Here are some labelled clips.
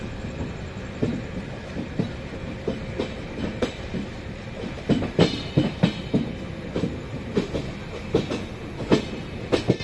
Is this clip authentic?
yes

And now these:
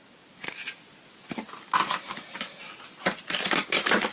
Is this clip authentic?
yes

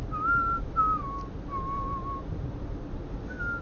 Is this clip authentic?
yes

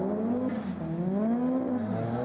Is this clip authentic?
yes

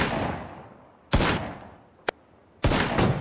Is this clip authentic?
yes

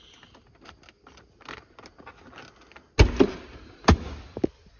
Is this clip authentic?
yes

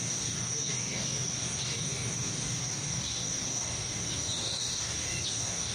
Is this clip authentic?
no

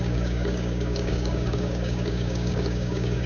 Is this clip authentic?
no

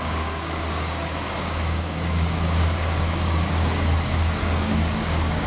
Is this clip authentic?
no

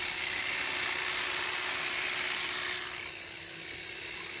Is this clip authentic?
yes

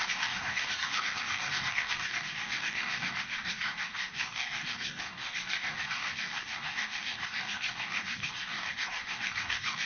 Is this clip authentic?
no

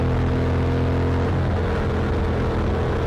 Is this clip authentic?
yes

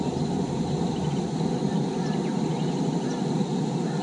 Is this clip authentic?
yes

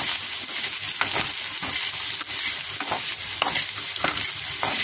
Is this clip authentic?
yes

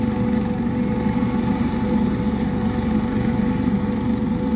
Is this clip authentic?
yes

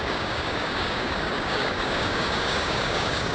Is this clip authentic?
no